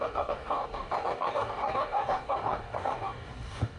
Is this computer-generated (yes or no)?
yes